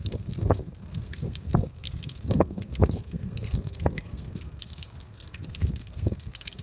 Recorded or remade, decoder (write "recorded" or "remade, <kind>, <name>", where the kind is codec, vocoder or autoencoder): remade, codec, SNAC